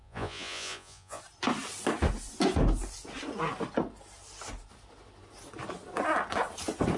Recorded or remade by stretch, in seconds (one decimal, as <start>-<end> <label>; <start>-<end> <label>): 0.0-1.2 remade; 1.2-7.0 recorded